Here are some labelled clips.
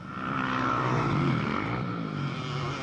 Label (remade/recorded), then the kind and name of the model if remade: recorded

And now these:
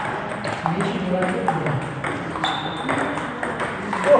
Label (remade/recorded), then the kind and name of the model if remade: recorded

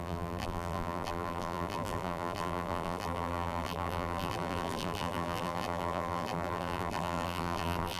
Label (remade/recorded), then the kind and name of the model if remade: remade, vocoder, BigVGAN v2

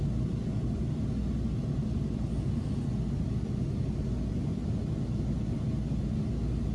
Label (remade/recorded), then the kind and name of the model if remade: recorded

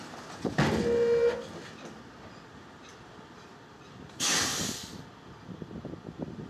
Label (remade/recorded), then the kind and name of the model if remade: recorded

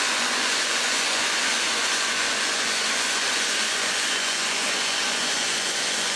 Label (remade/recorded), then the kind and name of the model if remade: remade, vocoder, Vocos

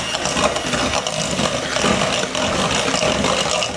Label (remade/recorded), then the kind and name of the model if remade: recorded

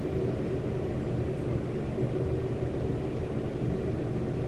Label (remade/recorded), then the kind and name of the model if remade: recorded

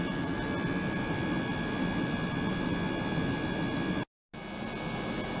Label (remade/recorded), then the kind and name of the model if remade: recorded